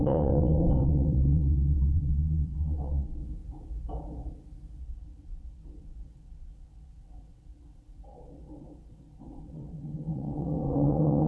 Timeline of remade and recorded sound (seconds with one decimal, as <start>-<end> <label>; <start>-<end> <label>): 0.0-3.2 remade; 3.2-4.8 recorded; 4.8-11.3 remade